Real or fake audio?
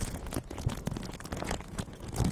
fake